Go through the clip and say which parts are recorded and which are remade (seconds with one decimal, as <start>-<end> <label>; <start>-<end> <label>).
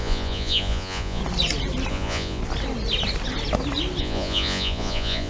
0.0-1.2 remade; 1.2-1.9 recorded; 1.9-2.4 remade; 2.4-4.0 recorded; 4.0-5.3 remade